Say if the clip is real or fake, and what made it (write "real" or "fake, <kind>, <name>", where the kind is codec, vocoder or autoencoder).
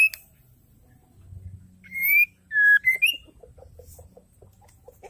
real